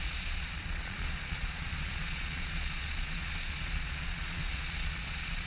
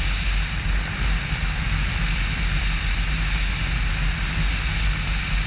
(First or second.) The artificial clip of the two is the first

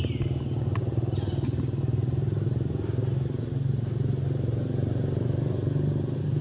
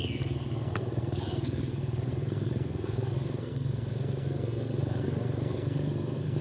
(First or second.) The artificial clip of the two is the second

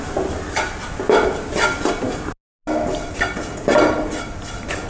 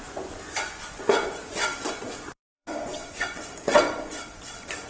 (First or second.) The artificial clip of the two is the second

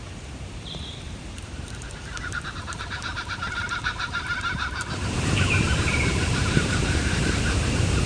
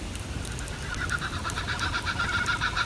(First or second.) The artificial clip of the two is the first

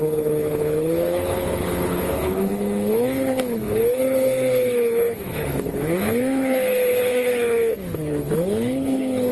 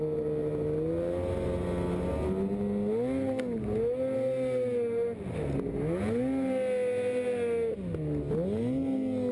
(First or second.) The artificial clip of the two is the first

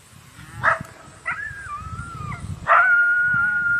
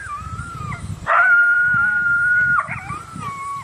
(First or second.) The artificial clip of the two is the second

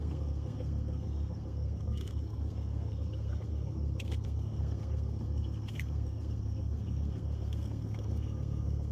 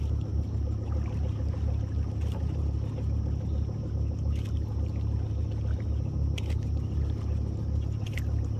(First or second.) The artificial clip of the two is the first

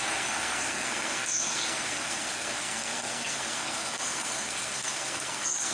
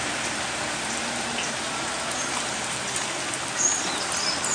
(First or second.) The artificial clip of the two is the first